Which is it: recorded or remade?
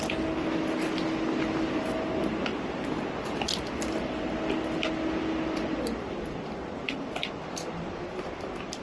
recorded